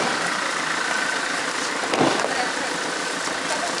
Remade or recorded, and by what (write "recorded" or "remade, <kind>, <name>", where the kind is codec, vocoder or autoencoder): recorded